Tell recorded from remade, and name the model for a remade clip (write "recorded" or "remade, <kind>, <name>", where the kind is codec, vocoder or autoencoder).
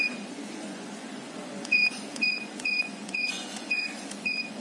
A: remade, vocoder, Vocos